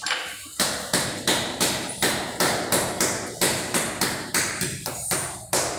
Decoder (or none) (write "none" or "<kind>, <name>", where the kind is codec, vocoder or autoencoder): vocoder, BigVGAN v2